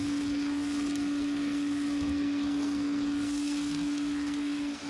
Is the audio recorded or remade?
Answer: remade